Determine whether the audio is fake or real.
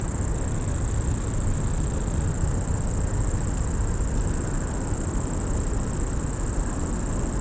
real